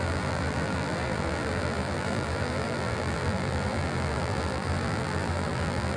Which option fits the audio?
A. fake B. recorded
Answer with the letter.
A